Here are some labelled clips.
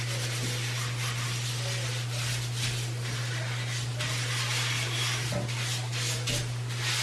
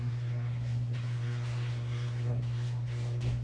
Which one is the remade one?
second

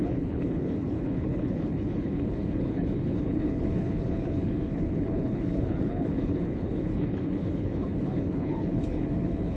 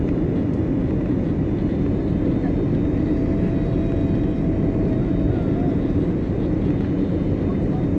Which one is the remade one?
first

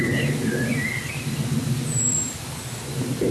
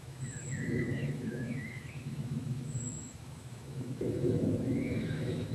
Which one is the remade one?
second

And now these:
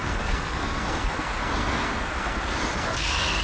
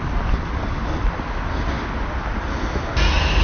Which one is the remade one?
first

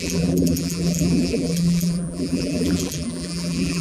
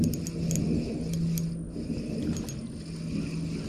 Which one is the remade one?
first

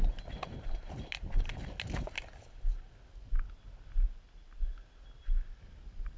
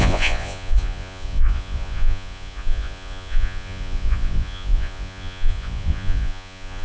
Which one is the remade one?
second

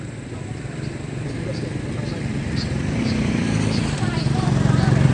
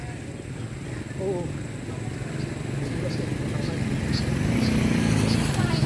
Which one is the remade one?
first